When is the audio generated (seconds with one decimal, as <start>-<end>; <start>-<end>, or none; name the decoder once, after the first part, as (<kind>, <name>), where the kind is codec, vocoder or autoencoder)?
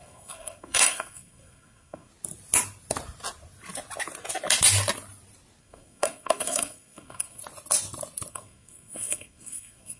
0.0-2.1 (codec, SNAC); 5.6-7.4; 8.3-10.0